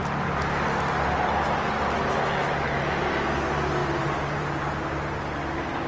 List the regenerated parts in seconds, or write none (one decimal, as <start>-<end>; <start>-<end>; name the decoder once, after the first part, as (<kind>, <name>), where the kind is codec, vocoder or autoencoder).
3.8-4.5 (vocoder, BigVGAN v2)